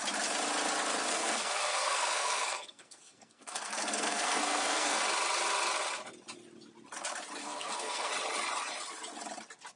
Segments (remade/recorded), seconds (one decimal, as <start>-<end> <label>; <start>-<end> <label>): 0.0-1.1 recorded; 1.1-5.0 remade; 5.0-7.4 recorded; 7.4-8.1 remade; 8.1-9.8 recorded